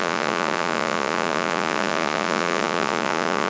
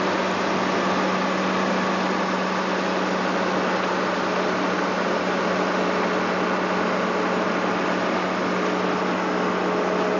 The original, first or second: second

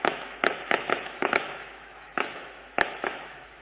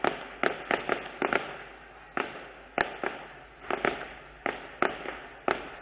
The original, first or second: second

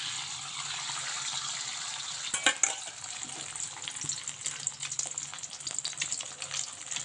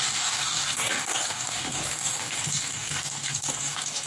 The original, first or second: first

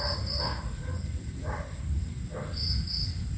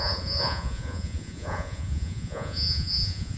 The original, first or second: first